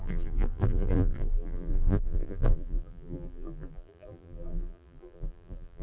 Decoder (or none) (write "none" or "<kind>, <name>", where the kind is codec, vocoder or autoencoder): vocoder, BigVGAN v2